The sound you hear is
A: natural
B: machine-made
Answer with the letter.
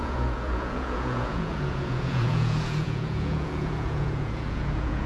B